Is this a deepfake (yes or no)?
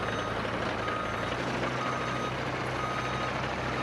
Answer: no